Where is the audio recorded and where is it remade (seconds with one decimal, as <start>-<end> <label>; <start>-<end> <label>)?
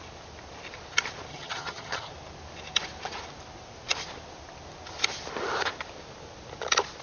0.0-1.3 recorded; 1.3-2.1 remade; 2.1-7.0 recorded